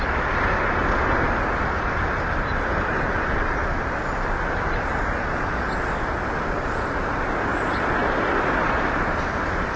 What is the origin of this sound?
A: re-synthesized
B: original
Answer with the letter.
B